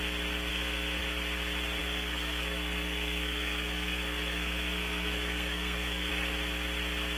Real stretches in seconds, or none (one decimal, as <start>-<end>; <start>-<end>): 0.0-0.5; 1.0-1.8; 6.1-7.2